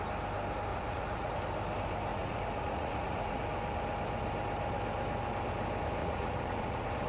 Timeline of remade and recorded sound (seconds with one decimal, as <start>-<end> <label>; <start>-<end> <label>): 0.0-0.7 recorded; 0.7-1.3 remade; 1.3-2.1 recorded; 2.1-3.4 remade; 3.4-6.0 recorded; 6.0-7.1 remade